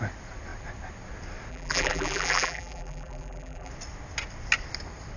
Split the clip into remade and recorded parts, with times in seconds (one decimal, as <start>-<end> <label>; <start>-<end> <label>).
0.0-1.5 recorded; 1.5-3.7 remade; 3.7-5.2 recorded